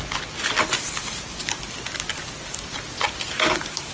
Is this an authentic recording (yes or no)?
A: yes